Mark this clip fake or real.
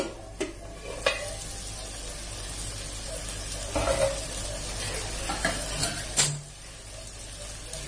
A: real